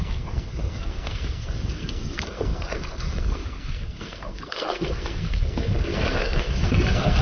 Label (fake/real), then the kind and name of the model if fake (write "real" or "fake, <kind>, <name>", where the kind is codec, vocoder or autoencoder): fake, codec, SNAC